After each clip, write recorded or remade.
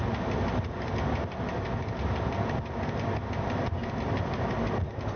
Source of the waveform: recorded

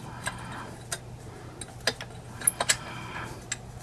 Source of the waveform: recorded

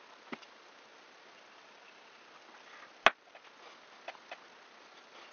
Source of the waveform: recorded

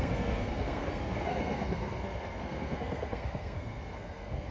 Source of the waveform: remade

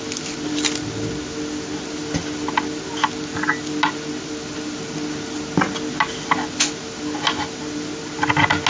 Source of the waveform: recorded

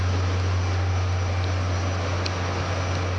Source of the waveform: recorded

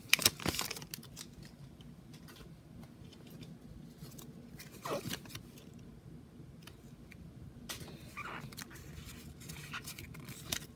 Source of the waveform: recorded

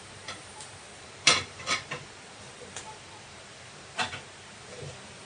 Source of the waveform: remade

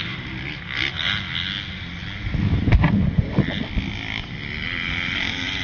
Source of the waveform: recorded